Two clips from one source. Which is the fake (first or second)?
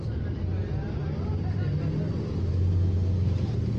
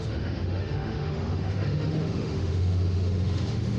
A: second